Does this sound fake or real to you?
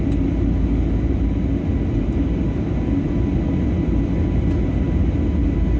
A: real